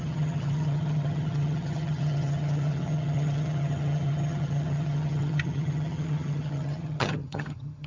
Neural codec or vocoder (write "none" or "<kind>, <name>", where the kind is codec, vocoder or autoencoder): vocoder, HiFi-GAN